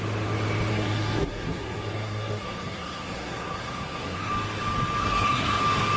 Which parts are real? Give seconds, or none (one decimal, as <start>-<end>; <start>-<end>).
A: 0.0-0.7; 4.3-5.0; 5.6-6.0